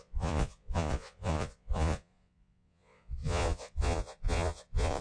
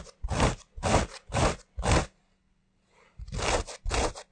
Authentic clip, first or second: second